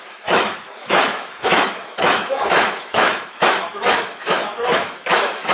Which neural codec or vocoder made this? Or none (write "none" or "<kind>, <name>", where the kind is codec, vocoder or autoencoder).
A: autoencoder, DAC-VAE